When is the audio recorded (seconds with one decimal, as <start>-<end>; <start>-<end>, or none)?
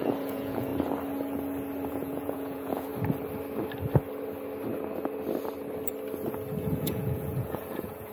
0.7-1.9; 2.9-6.6